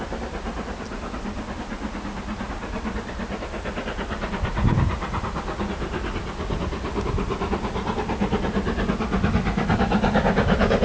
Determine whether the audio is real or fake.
real